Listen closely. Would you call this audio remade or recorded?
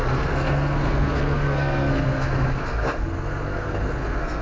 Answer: remade